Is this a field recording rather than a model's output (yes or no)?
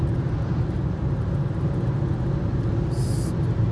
yes